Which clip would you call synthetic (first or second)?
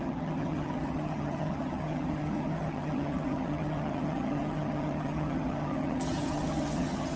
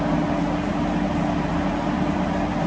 first